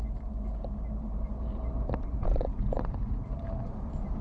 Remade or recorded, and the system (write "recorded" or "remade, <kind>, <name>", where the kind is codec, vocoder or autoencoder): remade, vocoder, BigVGAN v2